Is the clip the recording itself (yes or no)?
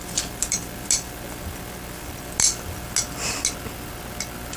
yes